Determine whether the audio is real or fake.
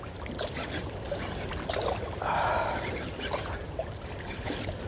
real